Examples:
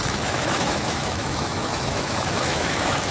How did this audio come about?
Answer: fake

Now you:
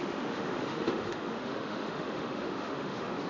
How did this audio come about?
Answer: fake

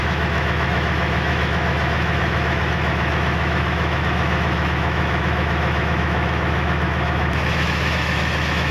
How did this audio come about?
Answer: fake